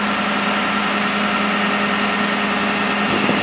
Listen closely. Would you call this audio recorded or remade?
recorded